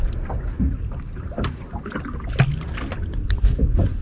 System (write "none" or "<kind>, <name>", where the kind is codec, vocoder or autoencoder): none